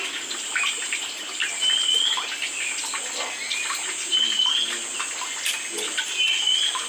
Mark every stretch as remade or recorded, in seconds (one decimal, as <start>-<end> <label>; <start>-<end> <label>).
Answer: 0.0-6.9 recorded

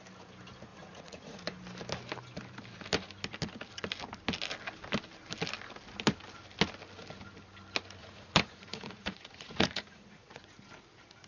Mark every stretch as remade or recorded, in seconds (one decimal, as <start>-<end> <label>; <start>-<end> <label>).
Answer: 0.0-0.7 recorded; 0.7-1.6 remade; 1.6-8.0 recorded; 8.0-10.5 remade; 10.5-11.3 recorded

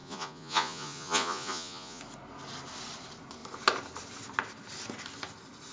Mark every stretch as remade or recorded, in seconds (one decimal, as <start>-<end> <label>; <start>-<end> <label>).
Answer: 0.0-2.0 remade; 2.0-5.7 recorded